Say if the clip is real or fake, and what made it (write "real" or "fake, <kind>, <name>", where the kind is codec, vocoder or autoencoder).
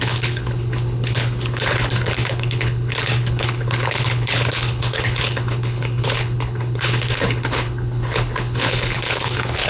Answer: fake, codec, HILCodec